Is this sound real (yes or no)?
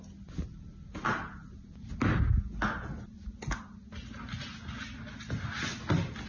yes